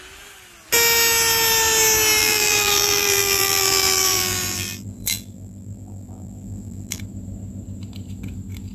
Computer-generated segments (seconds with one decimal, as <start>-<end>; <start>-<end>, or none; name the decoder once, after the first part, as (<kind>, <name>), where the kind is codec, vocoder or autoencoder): 2.2-7.0 (vocoder, BigVGAN v2)

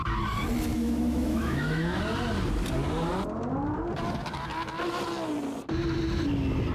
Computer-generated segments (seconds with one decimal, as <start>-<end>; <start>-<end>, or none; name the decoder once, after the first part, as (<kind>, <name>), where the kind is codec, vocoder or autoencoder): 0.7-2.0 (autoencoder, DAC-VAE)